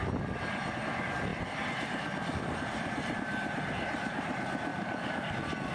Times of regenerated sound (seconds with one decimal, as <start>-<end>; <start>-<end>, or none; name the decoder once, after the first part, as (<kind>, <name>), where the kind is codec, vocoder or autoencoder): 4.7-5.3 (codec, DAC)

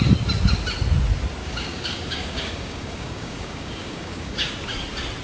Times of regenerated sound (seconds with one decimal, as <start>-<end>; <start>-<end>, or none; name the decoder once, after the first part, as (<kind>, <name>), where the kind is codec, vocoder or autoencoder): 1.4-4.5 (codec, DAC)